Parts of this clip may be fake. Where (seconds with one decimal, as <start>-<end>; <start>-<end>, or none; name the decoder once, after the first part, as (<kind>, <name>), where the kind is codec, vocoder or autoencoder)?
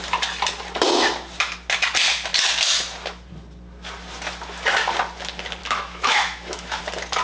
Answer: 5.6-6.8 (autoencoder, DAC-VAE)